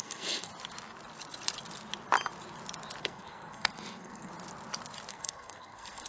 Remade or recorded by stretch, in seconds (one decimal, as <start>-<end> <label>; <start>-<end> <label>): 0.0-0.5 remade; 0.5-3.0 recorded; 3.0-4.3 remade; 4.3-5.1 recorded; 5.1-6.1 remade